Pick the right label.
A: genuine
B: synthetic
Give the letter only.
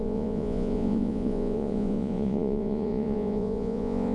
B